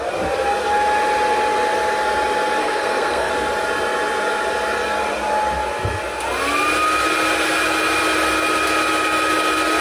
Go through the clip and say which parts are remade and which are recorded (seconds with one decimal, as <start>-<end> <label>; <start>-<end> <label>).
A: 0.0-2.6 recorded; 2.6-3.3 remade; 3.3-9.8 recorded